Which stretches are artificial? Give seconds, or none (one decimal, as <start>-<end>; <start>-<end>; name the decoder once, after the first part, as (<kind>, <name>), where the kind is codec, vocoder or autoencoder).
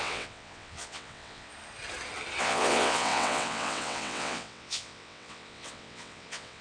0.0-1.5 (vocoder, WaveNeXt); 2.4-6.6